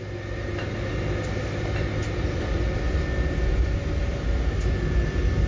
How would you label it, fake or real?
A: real